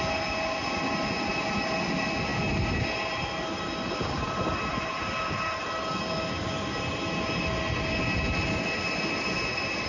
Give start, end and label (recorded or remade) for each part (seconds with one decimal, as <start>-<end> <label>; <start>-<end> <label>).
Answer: 0.0-9.9 recorded